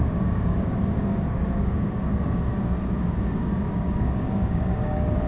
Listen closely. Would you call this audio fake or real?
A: fake